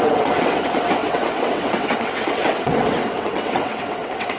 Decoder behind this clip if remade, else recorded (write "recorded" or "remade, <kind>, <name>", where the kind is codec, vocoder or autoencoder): remade, vocoder, WaveNeXt